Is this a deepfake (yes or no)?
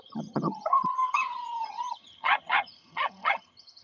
yes